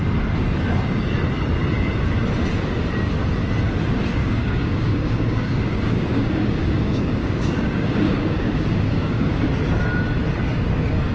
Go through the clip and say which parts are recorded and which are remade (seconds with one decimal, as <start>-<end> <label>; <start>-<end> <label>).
0.0-4.2 recorded; 4.2-9.4 remade; 9.4-11.1 recorded